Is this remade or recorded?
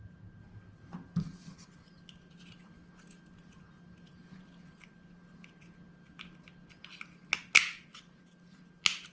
recorded